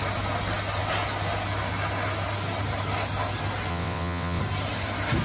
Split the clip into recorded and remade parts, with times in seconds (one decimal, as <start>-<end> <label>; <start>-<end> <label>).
0.0-3.7 recorded; 3.7-4.4 remade; 4.4-5.2 recorded